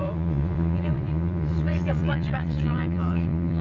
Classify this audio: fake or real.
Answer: fake